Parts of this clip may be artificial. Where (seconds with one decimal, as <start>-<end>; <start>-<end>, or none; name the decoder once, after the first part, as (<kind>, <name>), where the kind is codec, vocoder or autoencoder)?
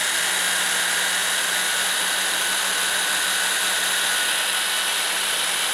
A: none